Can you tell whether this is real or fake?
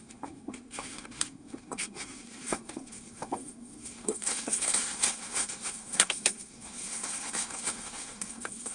fake